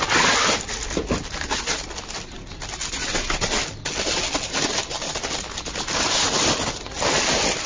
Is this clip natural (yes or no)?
yes